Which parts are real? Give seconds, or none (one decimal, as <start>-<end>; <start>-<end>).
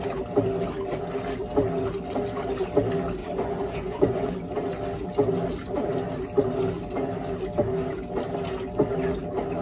0.0-3.2; 4.3-9.6